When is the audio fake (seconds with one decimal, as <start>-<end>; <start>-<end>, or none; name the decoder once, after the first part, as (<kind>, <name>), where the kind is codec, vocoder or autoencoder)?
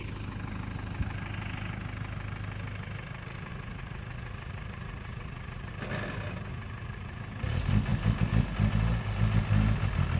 3.5-5.7 (vocoder, Vocos); 6.5-7.2